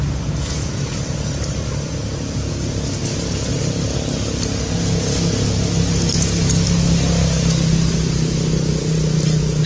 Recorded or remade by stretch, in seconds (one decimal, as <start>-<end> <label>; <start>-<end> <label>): 0.0-9.7 recorded